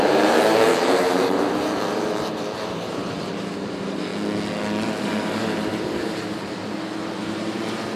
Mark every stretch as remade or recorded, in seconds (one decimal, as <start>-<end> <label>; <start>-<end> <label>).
0.0-4.1 remade; 4.1-5.0 recorded; 5.0-8.0 remade